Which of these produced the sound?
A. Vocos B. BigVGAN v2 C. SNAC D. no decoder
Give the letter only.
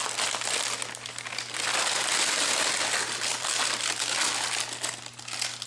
D